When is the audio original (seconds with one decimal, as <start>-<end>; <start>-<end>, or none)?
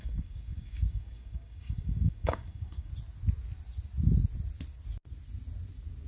2.9-6.1